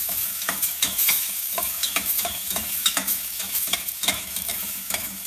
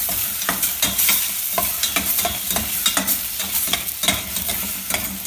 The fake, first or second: first